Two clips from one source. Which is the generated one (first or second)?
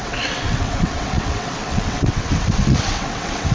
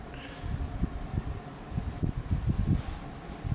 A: first